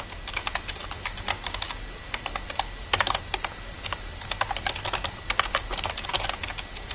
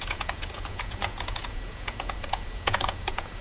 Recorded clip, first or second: first